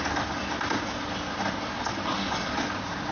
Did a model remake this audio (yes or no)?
no